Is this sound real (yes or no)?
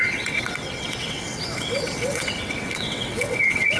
no